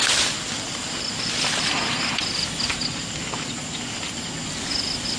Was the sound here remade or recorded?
recorded